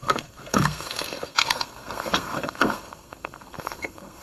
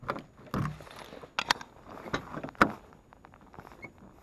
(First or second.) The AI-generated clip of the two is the first